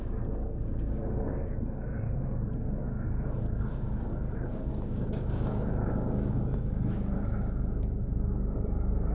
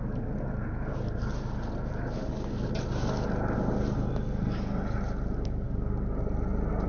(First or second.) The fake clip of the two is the first